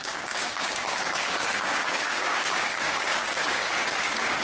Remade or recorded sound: remade